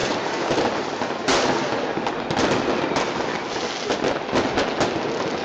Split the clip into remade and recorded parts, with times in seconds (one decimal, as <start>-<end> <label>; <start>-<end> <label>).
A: 0.0-5.4 recorded